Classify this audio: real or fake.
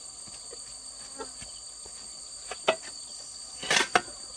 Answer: real